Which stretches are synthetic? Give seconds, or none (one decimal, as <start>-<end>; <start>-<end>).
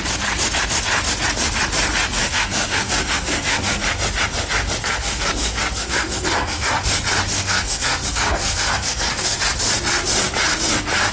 2.2-3.8; 4.8-6.8; 7.3-9.4